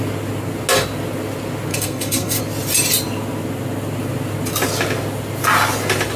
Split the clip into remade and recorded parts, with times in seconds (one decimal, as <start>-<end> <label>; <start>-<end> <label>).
0.0-1.7 recorded; 1.7-2.4 remade; 2.4-6.2 recorded